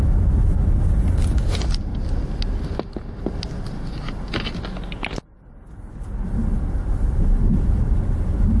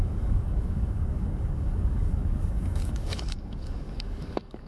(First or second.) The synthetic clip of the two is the second